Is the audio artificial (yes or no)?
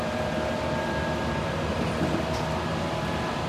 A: yes